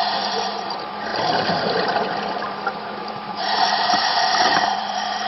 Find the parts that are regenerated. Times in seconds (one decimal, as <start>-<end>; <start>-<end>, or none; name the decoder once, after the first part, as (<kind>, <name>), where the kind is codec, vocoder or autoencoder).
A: 0.0-5.3 (vocoder, BigVGAN v2)